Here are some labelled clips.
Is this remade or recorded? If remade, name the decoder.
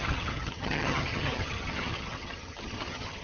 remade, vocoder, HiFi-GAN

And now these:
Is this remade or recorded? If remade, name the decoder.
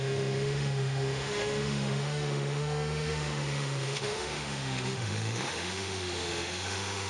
remade, autoencoder, DAC-VAE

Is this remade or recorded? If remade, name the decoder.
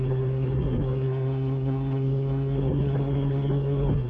remade, codec, SNAC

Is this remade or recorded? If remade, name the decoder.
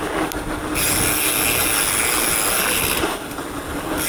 recorded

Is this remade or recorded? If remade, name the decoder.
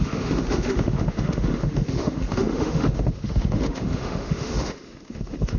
remade, autoencoder, DAC-VAE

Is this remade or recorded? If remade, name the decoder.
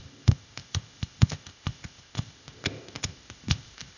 remade, codec, ZipCodec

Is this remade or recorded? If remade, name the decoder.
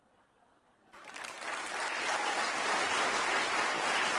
recorded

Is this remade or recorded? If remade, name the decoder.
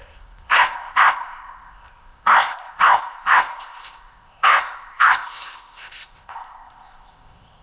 remade, codec, ZipCodec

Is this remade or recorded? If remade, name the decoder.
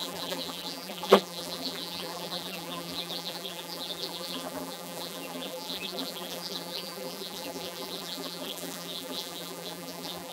remade, vocoder, BigVGAN v2